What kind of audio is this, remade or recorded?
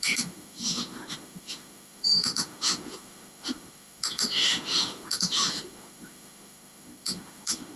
remade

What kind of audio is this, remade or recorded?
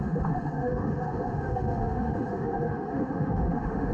remade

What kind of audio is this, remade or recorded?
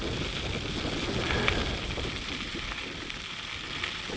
recorded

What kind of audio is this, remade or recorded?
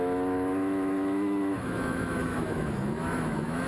remade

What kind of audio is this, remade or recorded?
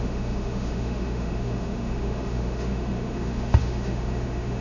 remade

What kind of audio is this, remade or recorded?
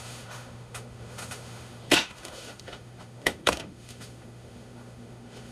remade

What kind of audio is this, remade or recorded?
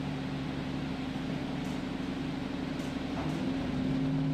recorded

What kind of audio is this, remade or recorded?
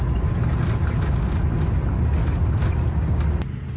recorded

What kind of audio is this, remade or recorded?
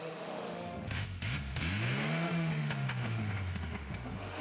remade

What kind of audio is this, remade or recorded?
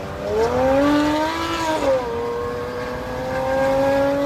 recorded